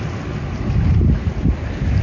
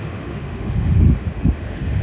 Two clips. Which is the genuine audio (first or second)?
first